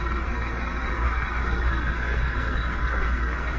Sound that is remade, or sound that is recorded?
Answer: remade